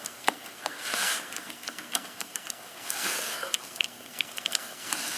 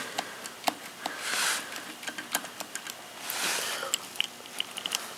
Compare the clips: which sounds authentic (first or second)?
second